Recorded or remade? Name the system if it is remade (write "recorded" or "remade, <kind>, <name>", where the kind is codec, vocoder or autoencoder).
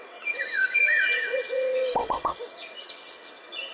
remade, vocoder, WaveNeXt